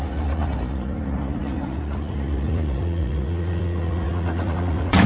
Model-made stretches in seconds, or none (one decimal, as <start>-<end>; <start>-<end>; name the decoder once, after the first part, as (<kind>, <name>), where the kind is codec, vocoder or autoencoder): 0.0-5.1 (vocoder, Vocos)